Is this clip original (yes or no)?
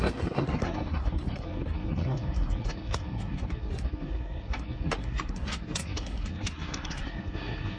no